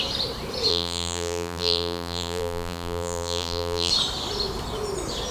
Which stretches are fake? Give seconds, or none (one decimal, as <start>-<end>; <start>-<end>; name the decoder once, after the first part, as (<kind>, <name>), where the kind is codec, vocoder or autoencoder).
0.7-3.9 (vocoder, BigVGAN v2)